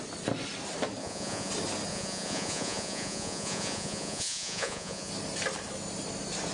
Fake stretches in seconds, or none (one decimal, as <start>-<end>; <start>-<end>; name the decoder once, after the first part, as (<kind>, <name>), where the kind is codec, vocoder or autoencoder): 1.0-1.5 (vocoder, Vocos); 1.9-5.1